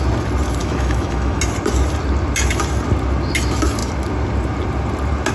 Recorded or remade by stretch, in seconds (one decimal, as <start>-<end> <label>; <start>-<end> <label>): 0.0-0.6 recorded; 0.6-1.4 remade; 1.4-5.3 recorded